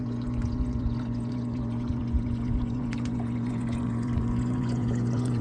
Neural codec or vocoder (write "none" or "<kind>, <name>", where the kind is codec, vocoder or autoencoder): vocoder, Vocos